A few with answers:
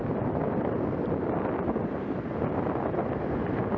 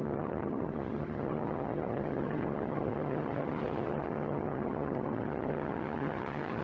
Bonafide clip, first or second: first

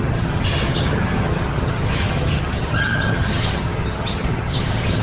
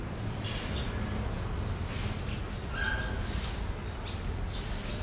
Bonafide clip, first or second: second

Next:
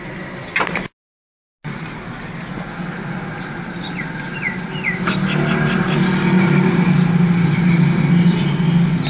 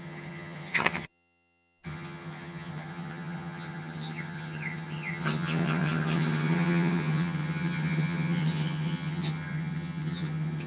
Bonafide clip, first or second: first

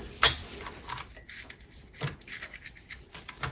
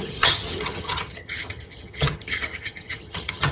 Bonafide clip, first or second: first